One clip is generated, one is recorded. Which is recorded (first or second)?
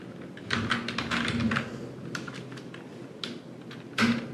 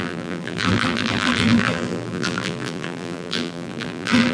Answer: first